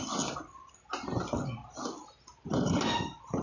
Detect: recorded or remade recorded